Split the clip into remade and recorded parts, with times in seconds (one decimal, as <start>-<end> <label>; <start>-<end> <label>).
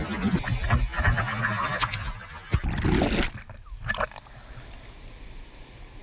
0.0-6.0 recorded